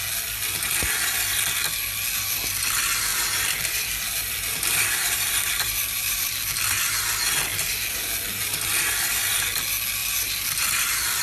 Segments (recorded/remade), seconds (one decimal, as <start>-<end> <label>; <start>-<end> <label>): 0.0-3.1 recorded; 3.1-6.5 remade; 6.5-7.5 recorded; 7.5-9.4 remade; 9.4-10.0 recorded; 10.0-11.2 remade